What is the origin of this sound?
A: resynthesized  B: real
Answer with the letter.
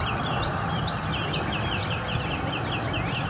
B